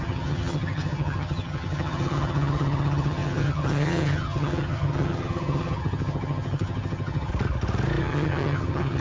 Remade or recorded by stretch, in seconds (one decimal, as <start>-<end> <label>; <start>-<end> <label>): 0.0-7.3 remade; 7.3-8.0 recorded; 8.0-9.0 remade